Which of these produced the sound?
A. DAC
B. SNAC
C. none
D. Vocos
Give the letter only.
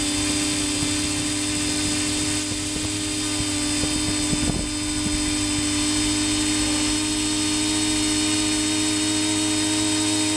C